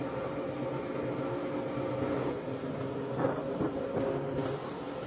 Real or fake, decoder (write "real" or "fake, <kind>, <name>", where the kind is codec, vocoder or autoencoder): real